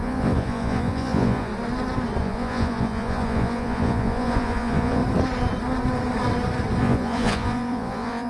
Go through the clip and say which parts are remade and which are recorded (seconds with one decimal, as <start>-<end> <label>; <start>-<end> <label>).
0.0-1.5 remade; 1.5-2.2 recorded; 2.2-5.0 remade; 5.0-6.8 recorded; 6.8-8.3 remade